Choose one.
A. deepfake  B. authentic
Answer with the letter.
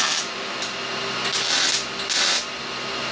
B